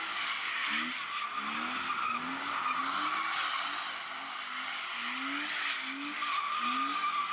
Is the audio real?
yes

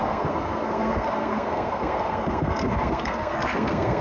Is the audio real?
no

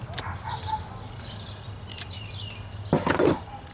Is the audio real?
yes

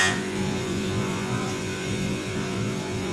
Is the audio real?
no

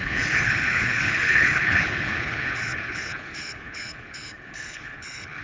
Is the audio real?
no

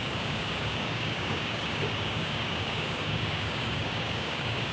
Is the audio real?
no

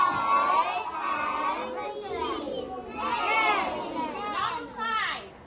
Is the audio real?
yes